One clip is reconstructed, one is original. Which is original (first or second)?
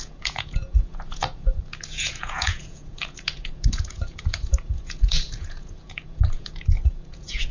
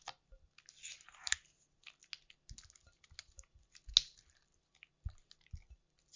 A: second